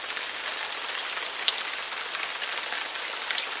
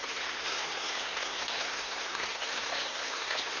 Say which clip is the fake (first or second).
second